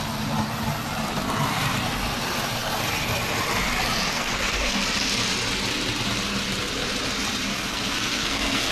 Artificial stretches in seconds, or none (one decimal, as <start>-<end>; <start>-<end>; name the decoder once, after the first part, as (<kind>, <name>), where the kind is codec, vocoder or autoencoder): 4.1-4.8 (codec, SNAC); 7.5-8.7